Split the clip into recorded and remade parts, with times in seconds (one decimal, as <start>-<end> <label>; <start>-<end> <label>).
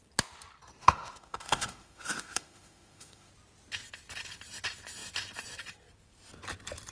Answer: 0.0-0.8 recorded; 0.8-3.3 remade; 3.3-6.9 recorded